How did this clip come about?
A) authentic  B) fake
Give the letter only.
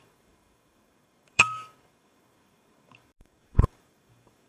B